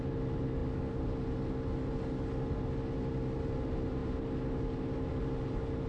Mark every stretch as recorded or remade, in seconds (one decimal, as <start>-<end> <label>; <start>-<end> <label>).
0.0-5.9 recorded